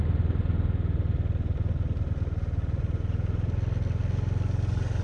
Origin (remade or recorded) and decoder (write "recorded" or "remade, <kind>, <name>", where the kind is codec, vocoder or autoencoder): recorded